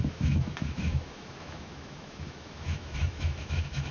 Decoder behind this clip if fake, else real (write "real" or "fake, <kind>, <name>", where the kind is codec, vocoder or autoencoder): fake, autoencoder, DAC-VAE